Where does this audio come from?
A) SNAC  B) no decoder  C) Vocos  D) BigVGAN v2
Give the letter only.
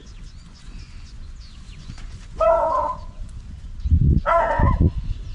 C